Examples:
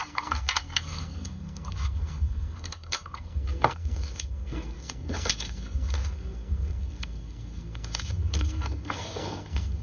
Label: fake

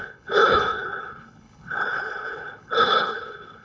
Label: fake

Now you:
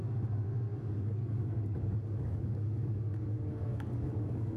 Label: fake